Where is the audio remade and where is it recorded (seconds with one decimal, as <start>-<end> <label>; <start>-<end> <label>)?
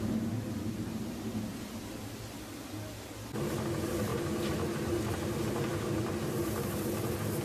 0.0-7.4 recorded